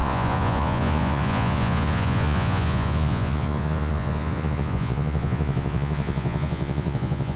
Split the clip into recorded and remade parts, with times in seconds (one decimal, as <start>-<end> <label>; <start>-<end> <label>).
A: 0.0-7.4 remade

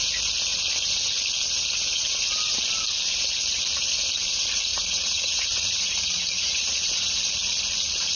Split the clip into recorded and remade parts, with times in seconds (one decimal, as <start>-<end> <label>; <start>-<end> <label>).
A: 0.0-4.7 recorded; 4.7-7.2 remade; 7.2-8.2 recorded

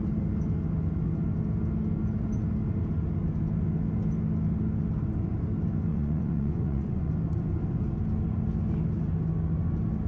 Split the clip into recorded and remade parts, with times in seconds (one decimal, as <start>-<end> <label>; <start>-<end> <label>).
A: 0.0-5.9 recorded; 5.9-7.1 remade; 7.1-10.1 recorded

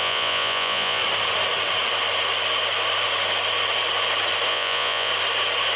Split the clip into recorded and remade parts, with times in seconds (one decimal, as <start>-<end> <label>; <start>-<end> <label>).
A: 0.0-1.0 remade; 1.0-4.5 recorded; 4.5-5.1 remade; 5.1-5.8 recorded

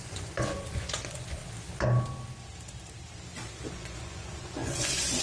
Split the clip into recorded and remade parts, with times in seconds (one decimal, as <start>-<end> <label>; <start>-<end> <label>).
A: 0.0-1.4 remade; 1.4-3.7 recorded; 3.7-5.2 remade